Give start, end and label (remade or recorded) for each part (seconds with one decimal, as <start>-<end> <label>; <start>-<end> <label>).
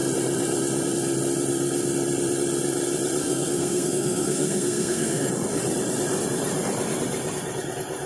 0.0-3.2 recorded; 3.2-5.3 remade; 5.3-8.1 recorded